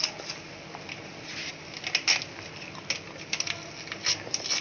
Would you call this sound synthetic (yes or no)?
no